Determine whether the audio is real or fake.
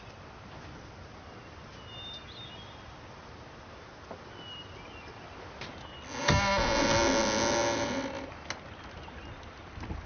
real